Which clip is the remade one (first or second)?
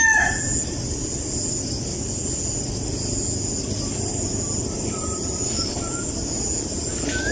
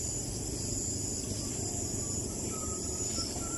second